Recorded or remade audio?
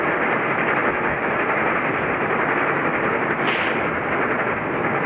recorded